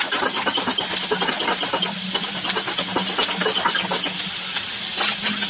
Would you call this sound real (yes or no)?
yes